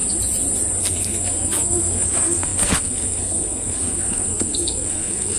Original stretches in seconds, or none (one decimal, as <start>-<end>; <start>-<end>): 0.0-0.8